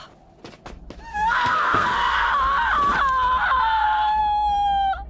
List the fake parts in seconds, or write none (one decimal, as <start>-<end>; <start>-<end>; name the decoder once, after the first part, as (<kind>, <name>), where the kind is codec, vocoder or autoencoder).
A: 1.1-2.3 (codec, SNAC); 3.6-4.2

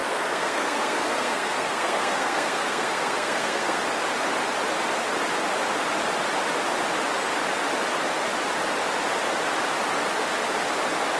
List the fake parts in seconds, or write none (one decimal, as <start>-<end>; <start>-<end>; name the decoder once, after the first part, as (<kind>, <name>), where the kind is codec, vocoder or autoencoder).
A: 0.0-3.8 (codec, SNAC)

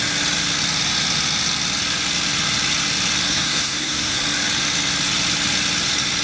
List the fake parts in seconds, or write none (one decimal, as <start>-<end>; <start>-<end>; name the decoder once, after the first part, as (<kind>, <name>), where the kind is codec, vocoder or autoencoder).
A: 3.3-4.2 (codec, SNAC)

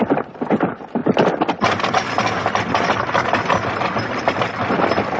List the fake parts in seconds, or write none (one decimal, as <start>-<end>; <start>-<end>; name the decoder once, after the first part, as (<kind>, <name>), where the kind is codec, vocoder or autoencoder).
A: none

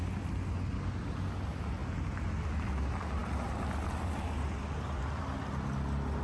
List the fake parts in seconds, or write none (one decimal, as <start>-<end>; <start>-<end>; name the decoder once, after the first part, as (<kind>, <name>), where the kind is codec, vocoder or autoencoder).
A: none

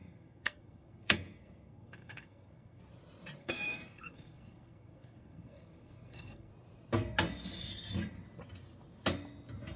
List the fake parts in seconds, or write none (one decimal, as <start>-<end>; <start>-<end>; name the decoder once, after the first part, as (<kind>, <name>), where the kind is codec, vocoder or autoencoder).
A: 0.0-2.8 (codec, SNAC); 3.4-6.5

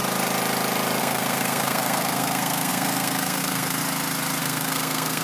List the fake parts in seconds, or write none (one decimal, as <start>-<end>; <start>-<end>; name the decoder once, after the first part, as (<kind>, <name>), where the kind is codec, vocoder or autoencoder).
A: 1.0-3.8 (codec, SNAC); 4.4-5.2

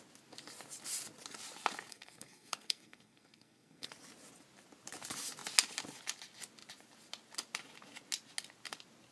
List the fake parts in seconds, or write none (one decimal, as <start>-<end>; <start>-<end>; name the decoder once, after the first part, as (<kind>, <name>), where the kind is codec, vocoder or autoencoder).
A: 1.9-3.9 (codec, SNAC)